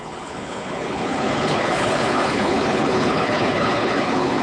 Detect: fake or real fake